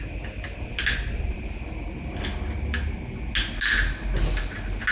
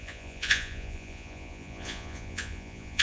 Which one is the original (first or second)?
first